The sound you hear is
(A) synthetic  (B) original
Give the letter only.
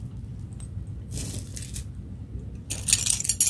B